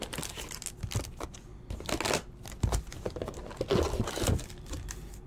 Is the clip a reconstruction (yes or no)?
no